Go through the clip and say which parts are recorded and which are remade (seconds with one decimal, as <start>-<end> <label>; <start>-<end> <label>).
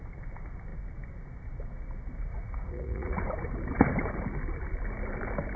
0.0-2.3 recorded; 2.3-3.2 remade; 3.2-5.6 recorded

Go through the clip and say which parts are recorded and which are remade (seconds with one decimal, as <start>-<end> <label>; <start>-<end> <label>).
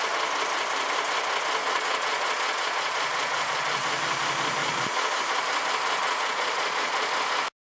0.0-1.6 recorded; 1.6-3.6 remade; 3.6-4.6 recorded; 4.6-5.1 remade; 5.1-6.0 recorded; 6.0-7.1 remade; 7.1-7.8 recorded